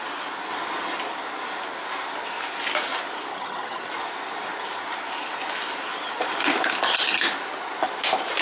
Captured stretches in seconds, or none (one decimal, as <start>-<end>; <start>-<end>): 0.0-3.3; 3.9-8.4

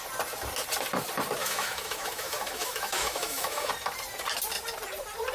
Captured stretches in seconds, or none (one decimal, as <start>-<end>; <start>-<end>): 0.0-1.4; 3.7-5.3

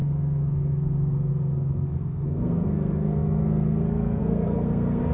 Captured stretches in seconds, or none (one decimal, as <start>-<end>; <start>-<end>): none

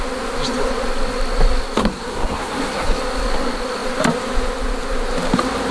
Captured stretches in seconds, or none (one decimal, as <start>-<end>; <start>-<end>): 0.0-1.8; 3.0-5.7

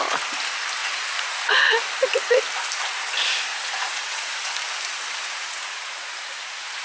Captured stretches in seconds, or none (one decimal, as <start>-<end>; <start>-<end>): 0.0-0.8; 1.6-3.5; 4.3-5.2

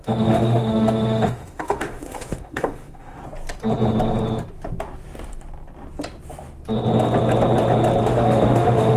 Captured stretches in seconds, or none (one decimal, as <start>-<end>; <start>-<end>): 3.2-8.0